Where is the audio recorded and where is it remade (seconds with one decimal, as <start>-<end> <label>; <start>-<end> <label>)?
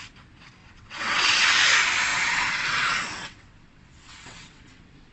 0.0-0.6 recorded; 0.6-1.5 remade; 1.5-2.1 recorded; 2.1-5.1 remade